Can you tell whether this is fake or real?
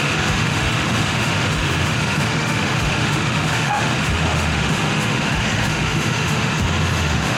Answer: fake